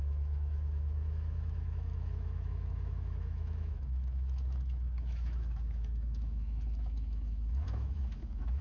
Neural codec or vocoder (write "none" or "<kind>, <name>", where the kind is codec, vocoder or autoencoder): autoencoder, DAC-VAE